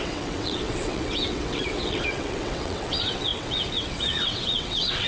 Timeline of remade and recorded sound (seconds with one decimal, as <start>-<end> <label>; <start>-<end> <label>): 0.0-5.1 remade